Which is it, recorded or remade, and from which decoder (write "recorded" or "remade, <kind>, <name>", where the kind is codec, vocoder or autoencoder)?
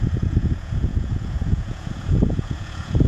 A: remade, vocoder, Vocos